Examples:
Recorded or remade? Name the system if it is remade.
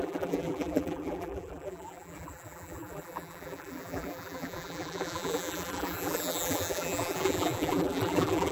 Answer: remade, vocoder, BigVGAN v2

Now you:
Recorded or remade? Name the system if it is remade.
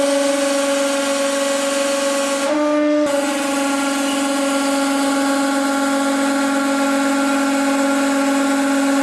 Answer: recorded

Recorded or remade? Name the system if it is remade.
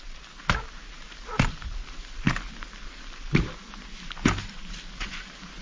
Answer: recorded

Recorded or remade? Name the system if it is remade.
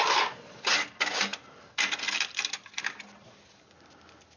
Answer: recorded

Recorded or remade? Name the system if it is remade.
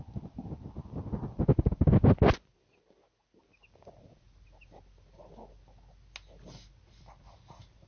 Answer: recorded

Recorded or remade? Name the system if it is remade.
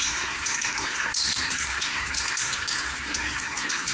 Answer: remade, codec, SNAC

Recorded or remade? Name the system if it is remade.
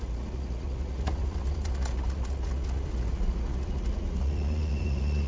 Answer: remade, vocoder, Vocos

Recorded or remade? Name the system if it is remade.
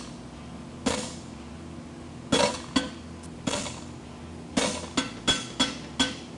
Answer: recorded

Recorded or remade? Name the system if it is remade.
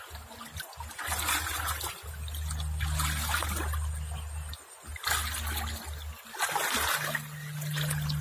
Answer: recorded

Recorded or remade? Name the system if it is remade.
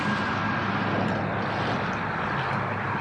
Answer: recorded